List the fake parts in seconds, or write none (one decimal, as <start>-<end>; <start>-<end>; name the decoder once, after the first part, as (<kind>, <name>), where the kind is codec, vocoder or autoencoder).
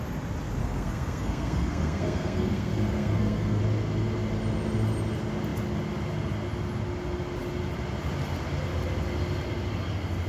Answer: 0.6-3.6 (codec, SNAC)